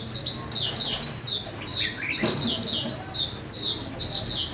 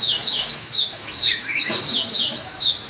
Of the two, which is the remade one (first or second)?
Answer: second